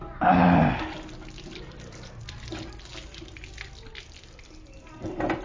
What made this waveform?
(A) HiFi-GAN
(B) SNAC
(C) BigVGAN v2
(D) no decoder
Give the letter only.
D